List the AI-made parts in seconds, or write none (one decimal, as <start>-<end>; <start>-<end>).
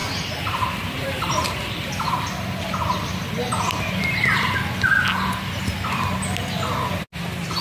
0.0-2.1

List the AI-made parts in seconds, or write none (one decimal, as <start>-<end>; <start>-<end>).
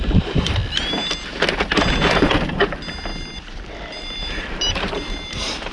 0.0-0.6; 2.1-3.1; 4.0-5.7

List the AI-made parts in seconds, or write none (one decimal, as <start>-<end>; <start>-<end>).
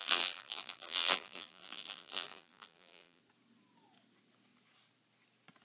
0.0-3.2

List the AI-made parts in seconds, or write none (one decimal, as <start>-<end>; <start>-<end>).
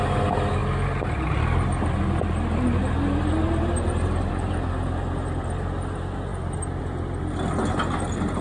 none